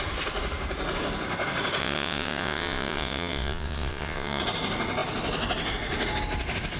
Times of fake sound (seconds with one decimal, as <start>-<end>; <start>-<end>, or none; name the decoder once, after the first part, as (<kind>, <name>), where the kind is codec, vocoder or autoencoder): 1.8-4.4 (vocoder, WaveNeXt)